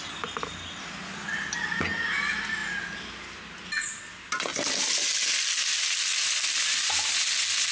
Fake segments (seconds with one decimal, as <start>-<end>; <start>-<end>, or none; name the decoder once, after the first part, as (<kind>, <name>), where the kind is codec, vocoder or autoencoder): none